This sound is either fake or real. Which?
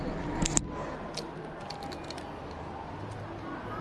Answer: real